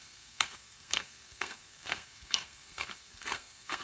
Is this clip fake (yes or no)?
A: yes